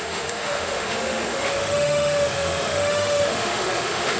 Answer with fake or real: fake